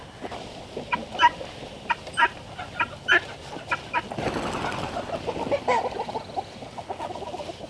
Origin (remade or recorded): recorded